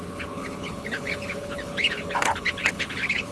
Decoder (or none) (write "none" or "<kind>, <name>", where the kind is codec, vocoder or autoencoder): codec, HILCodec